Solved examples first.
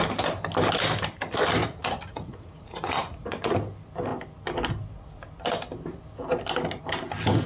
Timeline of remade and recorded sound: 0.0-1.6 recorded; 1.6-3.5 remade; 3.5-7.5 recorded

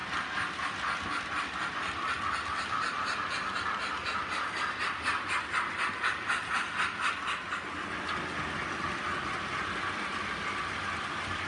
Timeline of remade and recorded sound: 0.0-11.5 recorded

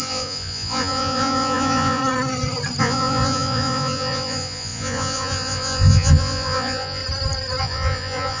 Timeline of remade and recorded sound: 0.0-2.0 remade; 2.0-2.8 recorded; 2.8-7.0 remade; 7.0-7.6 recorded; 7.6-8.4 remade

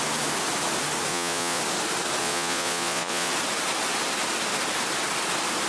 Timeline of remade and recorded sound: 0.0-1.1 recorded; 1.1-1.6 remade; 1.6-2.2 recorded; 2.2-3.3 remade; 3.3-5.7 recorded

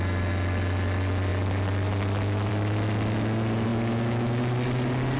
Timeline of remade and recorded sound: 0.0-5.2 recorded

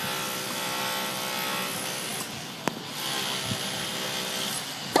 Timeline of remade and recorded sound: 0.0-5.0 recorded